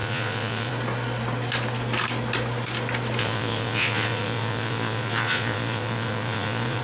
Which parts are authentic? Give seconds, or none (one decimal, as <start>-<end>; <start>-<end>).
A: 0.7-3.2